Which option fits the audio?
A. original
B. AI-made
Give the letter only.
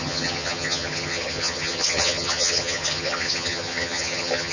B